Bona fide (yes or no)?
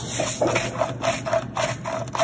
yes